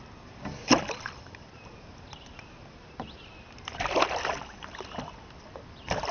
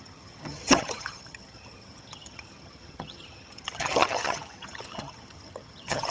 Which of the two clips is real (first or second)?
first